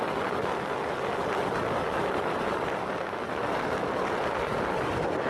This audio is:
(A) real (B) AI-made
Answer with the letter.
A